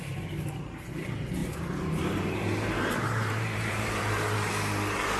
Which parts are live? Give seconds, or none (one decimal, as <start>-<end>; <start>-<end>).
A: 0.0-1.4; 4.5-5.2